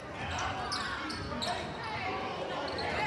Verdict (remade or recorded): recorded